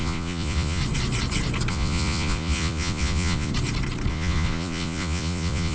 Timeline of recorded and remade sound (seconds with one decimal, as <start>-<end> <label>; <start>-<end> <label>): 0.0-0.8 remade; 0.8-1.7 recorded; 1.7-3.5 remade; 3.5-4.1 recorded; 4.1-5.7 remade